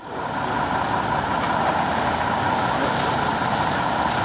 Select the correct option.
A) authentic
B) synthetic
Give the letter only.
A